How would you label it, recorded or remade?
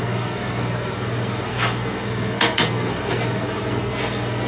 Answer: remade